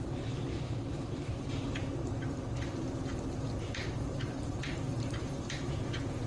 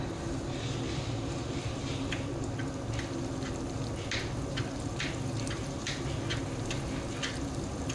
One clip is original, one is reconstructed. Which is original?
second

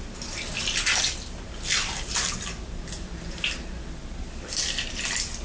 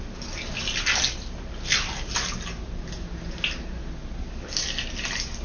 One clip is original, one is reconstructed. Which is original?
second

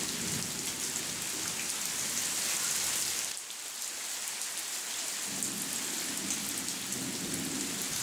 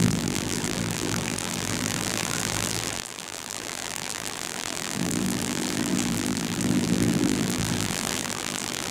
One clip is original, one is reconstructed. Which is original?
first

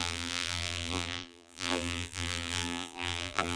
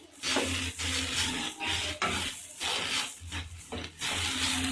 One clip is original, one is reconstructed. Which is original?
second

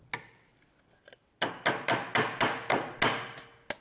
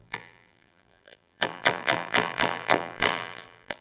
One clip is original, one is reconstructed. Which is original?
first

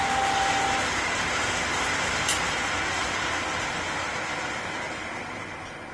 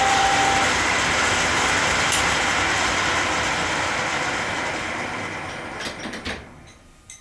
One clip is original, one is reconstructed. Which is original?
first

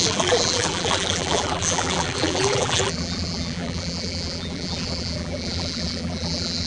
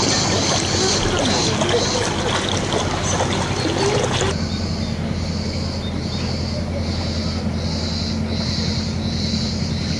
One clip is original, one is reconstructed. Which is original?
second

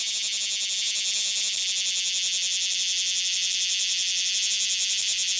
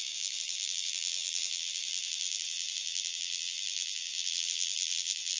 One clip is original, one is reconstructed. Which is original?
first